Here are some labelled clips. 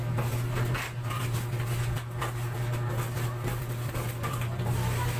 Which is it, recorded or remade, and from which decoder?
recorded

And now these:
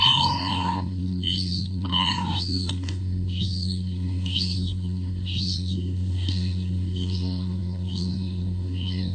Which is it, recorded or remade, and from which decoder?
remade, codec, SNAC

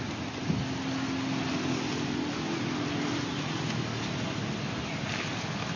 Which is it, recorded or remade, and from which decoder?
recorded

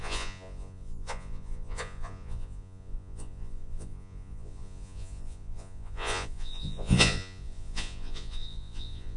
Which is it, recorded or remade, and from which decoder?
remade, vocoder, Vocos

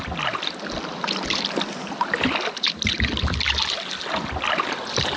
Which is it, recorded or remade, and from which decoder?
recorded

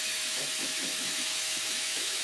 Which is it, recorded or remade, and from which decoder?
remade, autoencoder, DAC-VAE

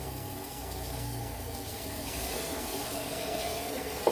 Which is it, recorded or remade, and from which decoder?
remade, codec, SNAC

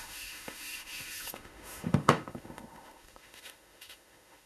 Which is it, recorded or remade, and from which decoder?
remade, autoencoder, DAC-VAE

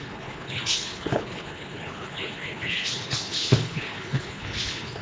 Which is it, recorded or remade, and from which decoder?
remade, codec, HILCodec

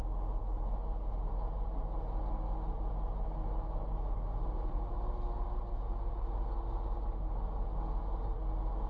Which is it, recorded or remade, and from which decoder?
recorded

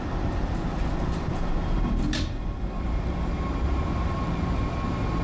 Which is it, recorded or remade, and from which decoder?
remade, vocoder, BigVGAN v2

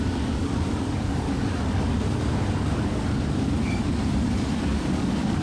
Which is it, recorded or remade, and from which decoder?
remade, codec, DAC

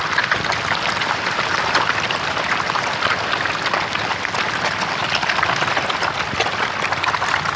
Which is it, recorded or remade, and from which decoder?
recorded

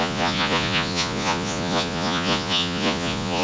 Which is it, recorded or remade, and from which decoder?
remade, vocoder, Vocos